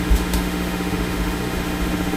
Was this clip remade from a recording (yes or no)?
yes